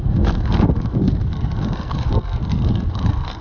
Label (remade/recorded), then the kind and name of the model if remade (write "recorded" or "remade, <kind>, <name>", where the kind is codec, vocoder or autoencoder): remade, codec, SNAC